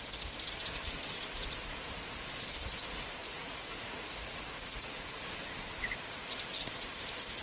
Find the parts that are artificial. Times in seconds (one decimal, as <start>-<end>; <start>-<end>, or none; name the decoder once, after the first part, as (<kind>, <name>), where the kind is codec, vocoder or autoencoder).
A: 3.2-5.2 (vocoder, Vocos)